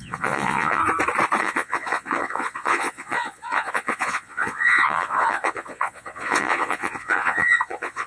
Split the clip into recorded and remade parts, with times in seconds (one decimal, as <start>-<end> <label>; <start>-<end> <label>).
0.0-0.8 remade; 0.8-1.4 recorded; 1.4-8.1 remade